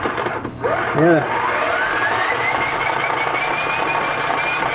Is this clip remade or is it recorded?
recorded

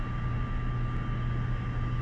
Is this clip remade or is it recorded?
recorded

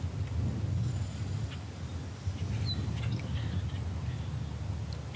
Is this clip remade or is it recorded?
recorded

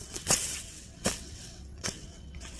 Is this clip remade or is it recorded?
remade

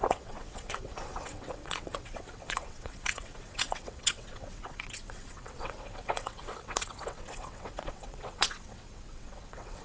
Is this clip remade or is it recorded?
remade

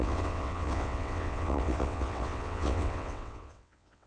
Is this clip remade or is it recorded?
remade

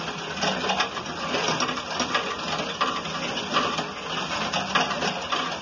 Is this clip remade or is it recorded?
recorded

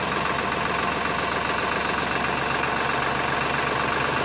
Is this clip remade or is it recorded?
recorded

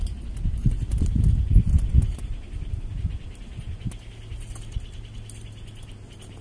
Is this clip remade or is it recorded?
recorded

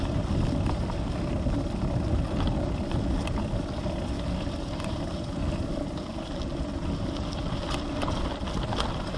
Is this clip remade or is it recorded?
recorded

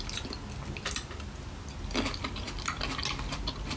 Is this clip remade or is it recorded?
recorded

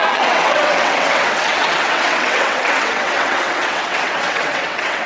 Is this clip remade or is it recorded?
remade